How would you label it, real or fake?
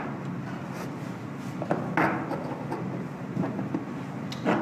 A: real